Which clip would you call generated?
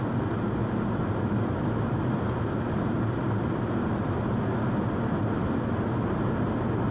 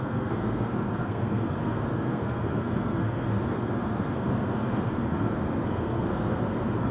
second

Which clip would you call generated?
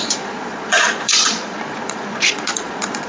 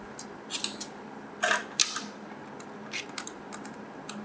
first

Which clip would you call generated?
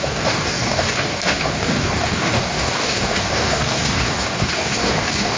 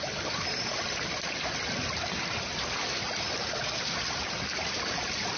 first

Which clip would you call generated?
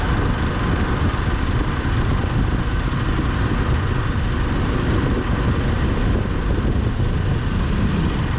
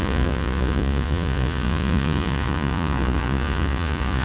second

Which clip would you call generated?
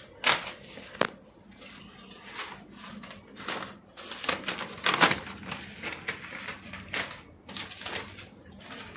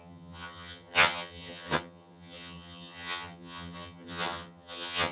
second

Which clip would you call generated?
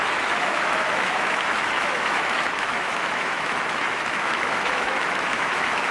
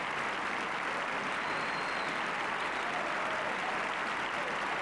first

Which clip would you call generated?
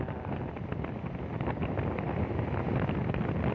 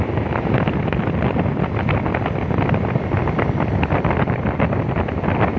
second